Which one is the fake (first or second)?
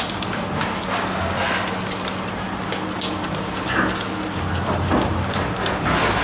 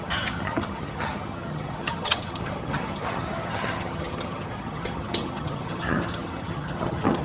second